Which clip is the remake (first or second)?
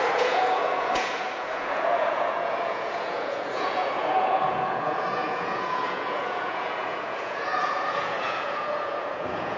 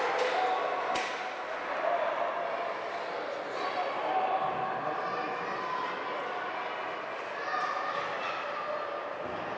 first